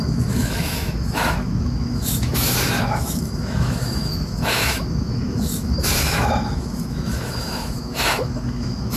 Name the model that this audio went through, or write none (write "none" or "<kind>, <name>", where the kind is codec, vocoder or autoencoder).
autoencoder, DAC-VAE